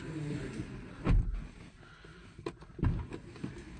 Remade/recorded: recorded